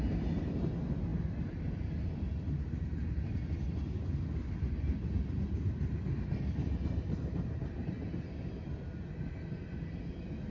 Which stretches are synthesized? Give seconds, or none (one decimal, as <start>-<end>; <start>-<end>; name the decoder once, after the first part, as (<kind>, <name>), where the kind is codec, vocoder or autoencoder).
none

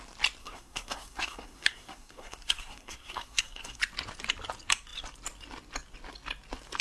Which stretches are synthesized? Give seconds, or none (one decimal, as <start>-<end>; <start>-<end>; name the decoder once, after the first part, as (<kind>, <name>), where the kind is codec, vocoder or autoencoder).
0.4-3.8 (codec, SNAC)

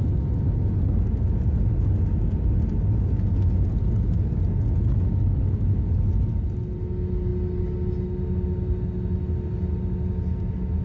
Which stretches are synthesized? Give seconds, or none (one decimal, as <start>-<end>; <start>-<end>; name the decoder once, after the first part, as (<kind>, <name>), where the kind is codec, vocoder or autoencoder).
none

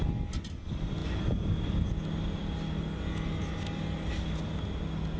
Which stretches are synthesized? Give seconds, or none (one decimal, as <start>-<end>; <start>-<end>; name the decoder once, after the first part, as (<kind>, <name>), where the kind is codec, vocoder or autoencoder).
none

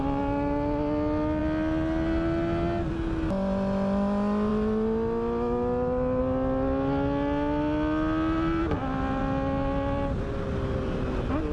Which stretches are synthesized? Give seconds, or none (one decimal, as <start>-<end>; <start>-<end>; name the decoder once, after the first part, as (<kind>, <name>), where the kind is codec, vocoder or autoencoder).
none